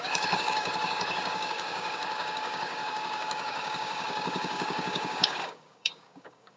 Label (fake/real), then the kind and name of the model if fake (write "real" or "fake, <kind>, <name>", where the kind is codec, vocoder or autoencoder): fake, codec, DAC